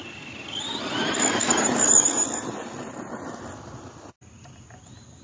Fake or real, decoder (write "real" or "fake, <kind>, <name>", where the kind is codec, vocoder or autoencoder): real